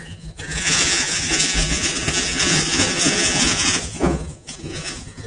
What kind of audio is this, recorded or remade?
remade